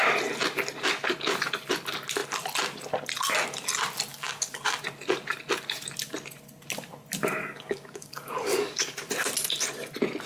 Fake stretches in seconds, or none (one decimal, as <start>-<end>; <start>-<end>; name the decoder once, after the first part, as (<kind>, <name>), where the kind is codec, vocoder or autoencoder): 4.1-4.8 (codec, DAC); 7.4-9.1